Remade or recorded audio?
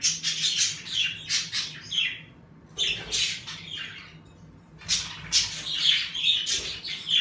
recorded